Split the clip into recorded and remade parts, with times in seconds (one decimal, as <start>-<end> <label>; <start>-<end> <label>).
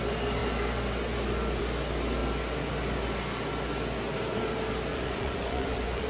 0.0-4.9 recorded; 4.9-6.1 remade